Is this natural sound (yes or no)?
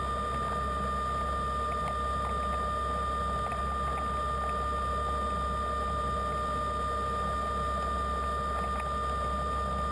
yes